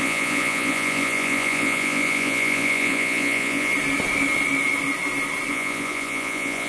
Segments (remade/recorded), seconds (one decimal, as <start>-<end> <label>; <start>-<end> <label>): 0.0-3.7 remade; 3.7-5.5 recorded; 5.5-6.7 remade